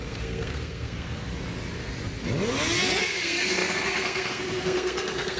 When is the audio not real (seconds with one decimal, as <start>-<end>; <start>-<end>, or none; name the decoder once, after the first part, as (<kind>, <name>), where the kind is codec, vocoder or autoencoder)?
0.0-1.3 (codec, SNAC); 3.0-5.4